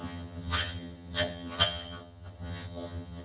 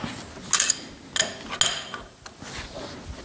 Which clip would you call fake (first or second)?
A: first